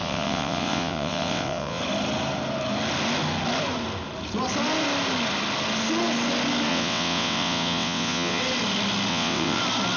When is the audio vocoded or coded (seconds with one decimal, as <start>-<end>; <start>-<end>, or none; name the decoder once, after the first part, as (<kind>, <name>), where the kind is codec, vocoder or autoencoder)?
0.0-1.8 (vocoder, WaveNeXt); 6.7-8.4; 9.1-9.6